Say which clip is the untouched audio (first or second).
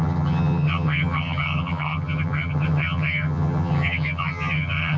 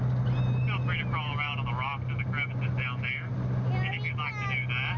second